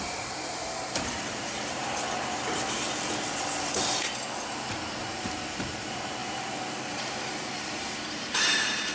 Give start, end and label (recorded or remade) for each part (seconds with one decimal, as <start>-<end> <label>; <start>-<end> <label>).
0.0-1.8 remade; 1.8-5.0 recorded; 5.0-8.9 remade